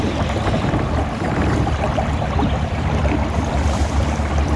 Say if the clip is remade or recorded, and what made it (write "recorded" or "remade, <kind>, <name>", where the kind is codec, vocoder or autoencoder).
remade, vocoder, BigVGAN v2